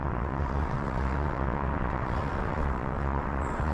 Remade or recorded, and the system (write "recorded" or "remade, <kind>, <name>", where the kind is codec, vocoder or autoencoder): remade, vocoder, WaveNeXt